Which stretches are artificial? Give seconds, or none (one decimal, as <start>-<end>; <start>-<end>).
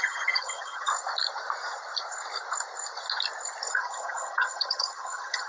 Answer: 0.0-0.9; 3.7-5.5